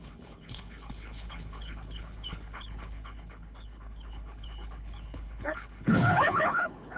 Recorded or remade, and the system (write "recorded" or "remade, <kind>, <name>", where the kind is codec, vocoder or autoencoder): remade, codec, HILCodec